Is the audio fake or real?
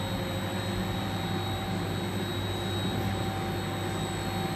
real